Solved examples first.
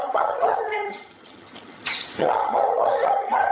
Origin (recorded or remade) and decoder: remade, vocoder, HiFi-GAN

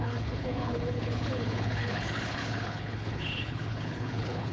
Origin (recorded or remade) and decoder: remade, codec, HILCodec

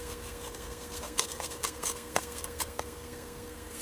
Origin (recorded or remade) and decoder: remade, codec, SNAC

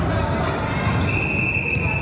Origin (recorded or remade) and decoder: recorded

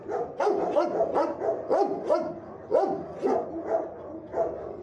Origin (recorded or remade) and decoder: recorded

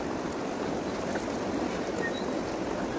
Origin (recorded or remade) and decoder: recorded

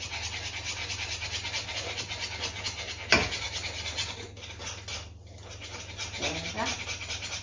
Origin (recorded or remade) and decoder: recorded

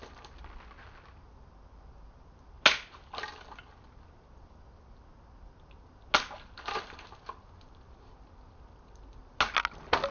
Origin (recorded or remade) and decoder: recorded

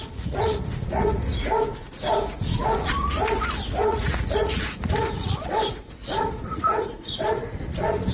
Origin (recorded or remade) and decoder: remade, vocoder, Vocos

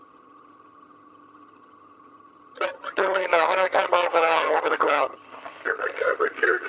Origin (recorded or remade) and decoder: remade, vocoder, HiFi-GAN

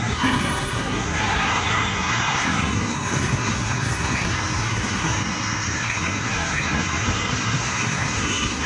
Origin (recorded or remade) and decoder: remade, codec, SNAC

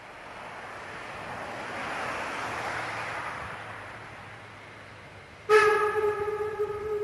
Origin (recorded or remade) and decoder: recorded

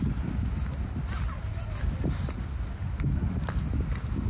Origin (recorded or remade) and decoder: recorded